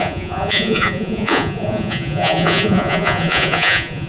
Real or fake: fake